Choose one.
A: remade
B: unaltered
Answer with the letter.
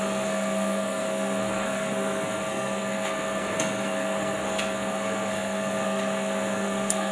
A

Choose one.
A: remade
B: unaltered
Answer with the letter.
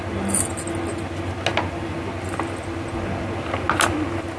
B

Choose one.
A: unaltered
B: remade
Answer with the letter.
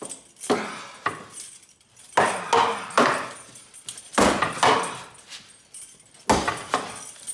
A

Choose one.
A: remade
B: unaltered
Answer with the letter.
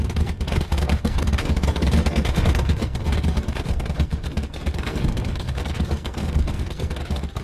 A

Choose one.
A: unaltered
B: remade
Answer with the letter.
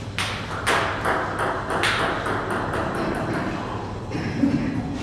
A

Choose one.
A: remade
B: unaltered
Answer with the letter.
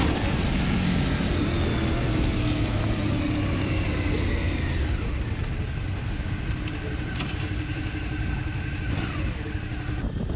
B